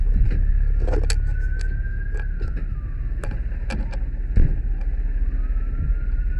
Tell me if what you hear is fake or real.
real